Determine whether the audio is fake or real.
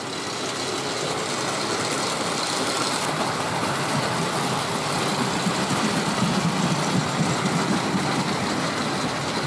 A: real